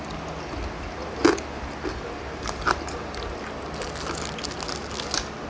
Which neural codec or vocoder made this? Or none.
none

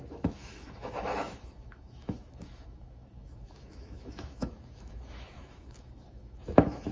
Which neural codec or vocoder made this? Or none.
autoencoder, DAC-VAE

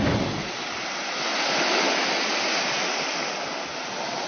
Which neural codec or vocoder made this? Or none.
none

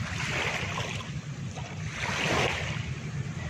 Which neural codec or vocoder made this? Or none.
vocoder, BigVGAN v2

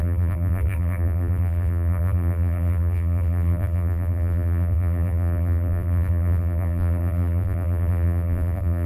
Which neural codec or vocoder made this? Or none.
vocoder, BigVGAN v2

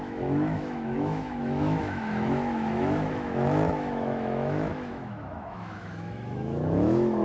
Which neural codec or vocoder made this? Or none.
autoencoder, DAC-VAE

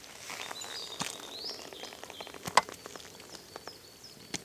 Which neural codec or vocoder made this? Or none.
none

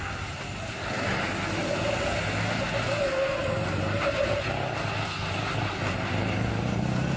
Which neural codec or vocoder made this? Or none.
none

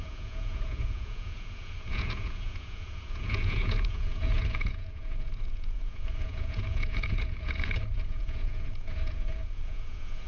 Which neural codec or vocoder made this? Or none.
vocoder, Vocos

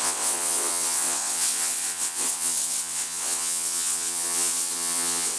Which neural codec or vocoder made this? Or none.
vocoder, WaveNeXt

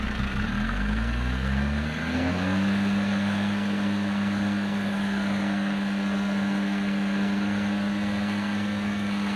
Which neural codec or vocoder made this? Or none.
codec, SNAC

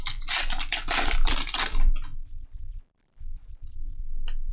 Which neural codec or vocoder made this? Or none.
vocoder, BigVGAN v2